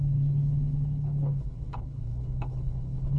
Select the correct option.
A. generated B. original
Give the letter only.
A